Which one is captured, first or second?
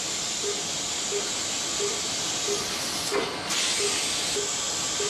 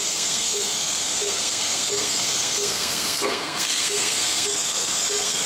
first